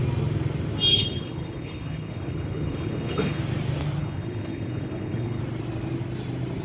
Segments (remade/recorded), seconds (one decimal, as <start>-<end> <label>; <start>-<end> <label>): 0.0-0.9 recorded; 0.9-3.4 remade; 3.4-4.0 recorded; 4.0-5.4 remade; 5.4-6.6 recorded